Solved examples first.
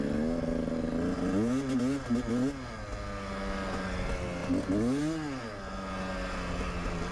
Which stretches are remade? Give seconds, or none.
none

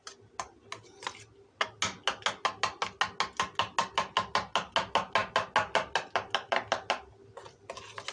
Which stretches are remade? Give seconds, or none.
none

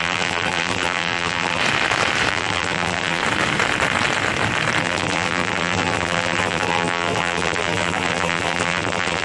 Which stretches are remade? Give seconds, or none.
0.0-1.6 (vocoder, BigVGAN v2); 2.3-3.2; 4.8-9.2

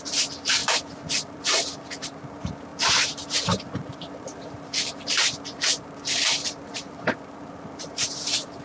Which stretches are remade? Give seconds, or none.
0.0-8.6 (vocoder, BigVGAN v2)

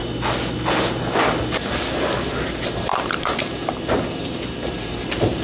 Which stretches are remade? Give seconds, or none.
1.0-5.4 (vocoder, BigVGAN v2)

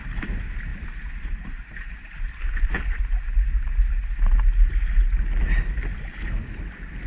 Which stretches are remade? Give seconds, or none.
0.7-3.0 (vocoder, BigVGAN v2)

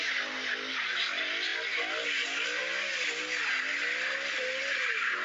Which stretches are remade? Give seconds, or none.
none